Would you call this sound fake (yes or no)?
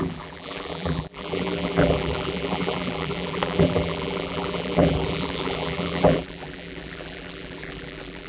yes